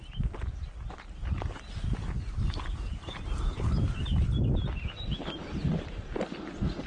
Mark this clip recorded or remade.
recorded